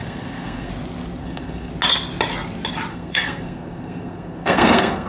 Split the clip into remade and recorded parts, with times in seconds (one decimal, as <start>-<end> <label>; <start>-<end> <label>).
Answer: 0.0-0.7 remade; 0.7-1.2 recorded; 1.2-1.7 remade; 1.7-2.9 recorded; 2.9-5.1 remade

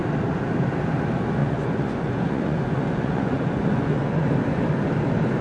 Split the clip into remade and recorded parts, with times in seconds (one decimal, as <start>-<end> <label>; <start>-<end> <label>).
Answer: 0.0-1.4 recorded; 1.4-4.2 remade; 4.2-5.4 recorded

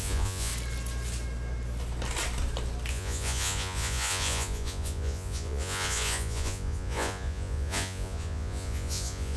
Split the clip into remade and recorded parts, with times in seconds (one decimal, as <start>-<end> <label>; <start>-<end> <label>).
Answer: 0.0-0.5 remade; 0.5-2.9 recorded; 2.9-9.4 remade

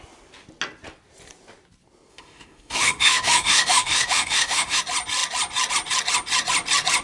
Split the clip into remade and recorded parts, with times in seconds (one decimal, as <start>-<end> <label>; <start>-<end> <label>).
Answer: 0.0-2.1 recorded; 2.1-4.8 remade; 4.8-7.0 recorded

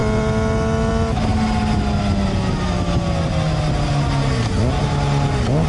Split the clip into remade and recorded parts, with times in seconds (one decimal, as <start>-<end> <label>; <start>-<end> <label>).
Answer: 0.0-5.7 recorded

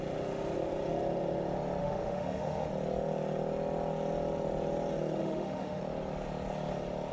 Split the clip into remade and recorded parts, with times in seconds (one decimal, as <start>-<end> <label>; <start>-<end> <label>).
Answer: 0.0-1.8 recorded; 1.8-2.7 remade; 2.7-5.2 recorded; 5.2-5.8 remade; 5.8-7.1 recorded

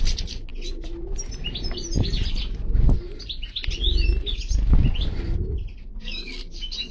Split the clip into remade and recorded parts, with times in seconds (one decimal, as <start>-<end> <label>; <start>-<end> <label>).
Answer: 0.0-5.9 recorded; 5.9-6.9 remade

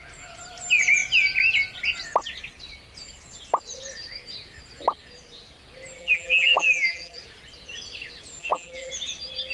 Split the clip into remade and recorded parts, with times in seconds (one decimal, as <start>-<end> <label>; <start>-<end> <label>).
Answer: 0.0-6.0 recorded; 6.0-7.2 remade; 7.2-8.4 recorded; 8.4-8.9 remade; 8.9-9.5 recorded